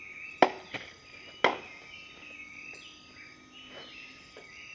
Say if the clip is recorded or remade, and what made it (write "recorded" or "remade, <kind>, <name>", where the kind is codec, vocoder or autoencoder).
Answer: recorded